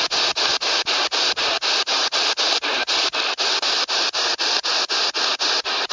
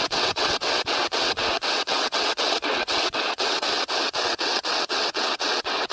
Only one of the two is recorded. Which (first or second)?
first